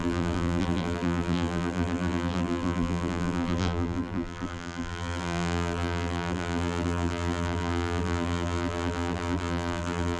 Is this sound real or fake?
fake